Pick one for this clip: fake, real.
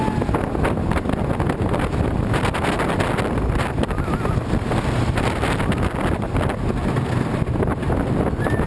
real